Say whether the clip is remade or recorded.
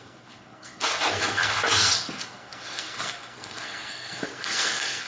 remade